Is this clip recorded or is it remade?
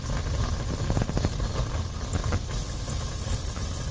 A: recorded